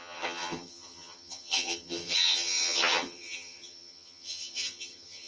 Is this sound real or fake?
fake